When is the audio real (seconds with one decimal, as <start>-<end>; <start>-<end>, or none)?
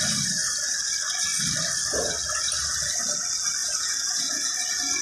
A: 0.0-3.6; 4.5-5.0